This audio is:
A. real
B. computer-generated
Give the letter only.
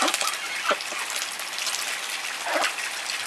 A